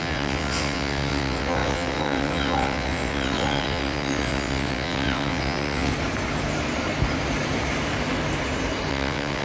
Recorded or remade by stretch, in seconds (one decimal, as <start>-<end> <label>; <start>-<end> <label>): 0.0-5.9 remade; 5.9-8.9 recorded; 8.9-9.4 remade